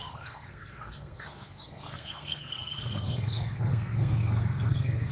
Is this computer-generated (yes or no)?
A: yes